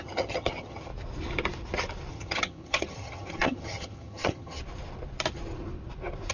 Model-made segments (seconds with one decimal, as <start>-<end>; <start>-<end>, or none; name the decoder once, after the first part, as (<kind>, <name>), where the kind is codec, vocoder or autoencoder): 0.0-0.9 (vocoder, HiFi-GAN); 2.1-4.6